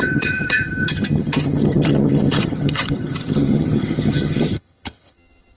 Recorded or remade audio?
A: remade